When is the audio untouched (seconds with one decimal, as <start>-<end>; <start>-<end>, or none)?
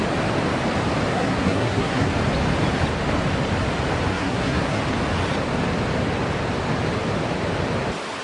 0.0-1.1; 2.1-4.1; 4.8-8.2